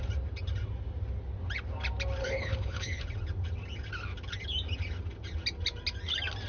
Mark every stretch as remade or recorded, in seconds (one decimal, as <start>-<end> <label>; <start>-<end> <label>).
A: 0.0-2.2 recorded; 2.2-3.0 remade; 3.0-6.5 recorded